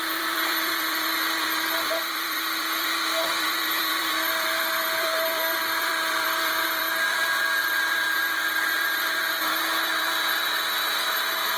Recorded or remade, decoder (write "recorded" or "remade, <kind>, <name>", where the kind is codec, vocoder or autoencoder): remade, vocoder, BigVGAN v2